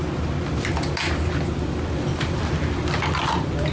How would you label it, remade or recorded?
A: recorded